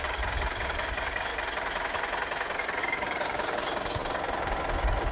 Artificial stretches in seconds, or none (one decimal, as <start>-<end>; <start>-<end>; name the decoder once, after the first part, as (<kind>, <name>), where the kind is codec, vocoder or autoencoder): 0.0-1.3 (codec, DAC); 2.8-5.1

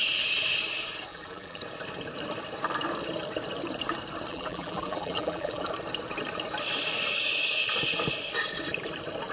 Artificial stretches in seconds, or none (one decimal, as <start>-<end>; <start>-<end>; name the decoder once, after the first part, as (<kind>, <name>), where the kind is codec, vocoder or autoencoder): 1.1-1.6 (vocoder, BigVGAN v2); 4.3-5.7